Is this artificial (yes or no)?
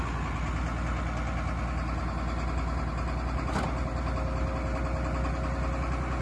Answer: no